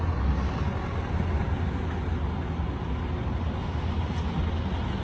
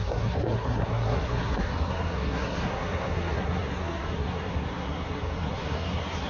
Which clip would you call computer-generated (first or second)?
second